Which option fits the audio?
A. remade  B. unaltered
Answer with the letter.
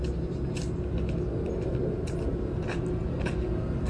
B